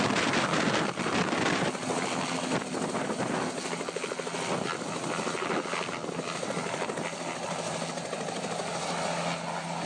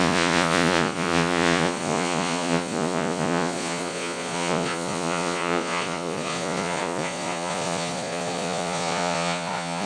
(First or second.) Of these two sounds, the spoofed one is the second